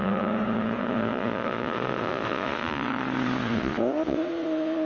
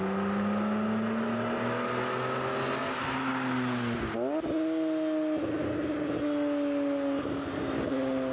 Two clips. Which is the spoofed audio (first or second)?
first